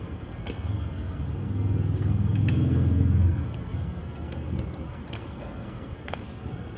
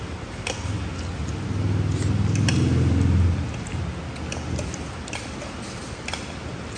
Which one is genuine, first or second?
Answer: second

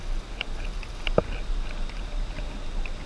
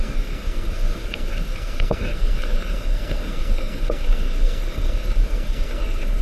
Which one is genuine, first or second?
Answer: first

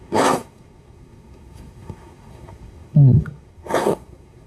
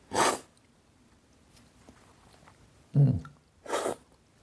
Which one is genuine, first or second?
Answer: second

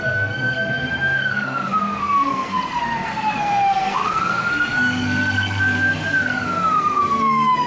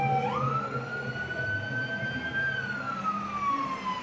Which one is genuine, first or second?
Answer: second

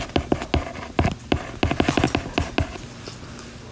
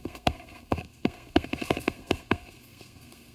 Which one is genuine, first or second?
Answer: first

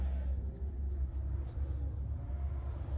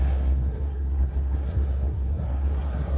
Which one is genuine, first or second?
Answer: first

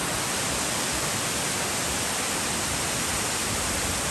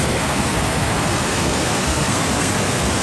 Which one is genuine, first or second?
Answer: first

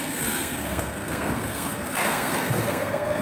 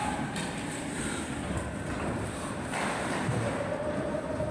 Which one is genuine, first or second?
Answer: second